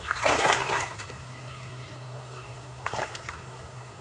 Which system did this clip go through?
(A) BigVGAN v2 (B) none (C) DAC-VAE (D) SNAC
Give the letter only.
D